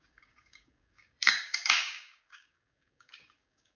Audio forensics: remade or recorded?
remade